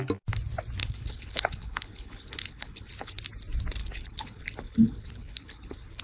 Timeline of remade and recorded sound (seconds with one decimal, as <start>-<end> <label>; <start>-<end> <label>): 0.0-0.8 recorded; 0.8-3.2 remade; 3.2-3.8 recorded; 3.8-6.0 remade